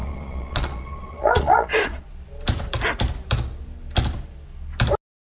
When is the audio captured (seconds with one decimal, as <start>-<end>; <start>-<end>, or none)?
2.1-5.3